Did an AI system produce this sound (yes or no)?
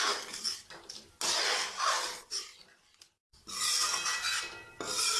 no